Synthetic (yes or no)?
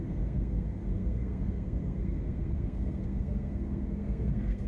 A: yes